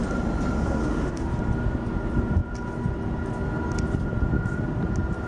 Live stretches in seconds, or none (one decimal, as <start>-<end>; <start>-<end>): 0.0-0.8; 1.3-5.3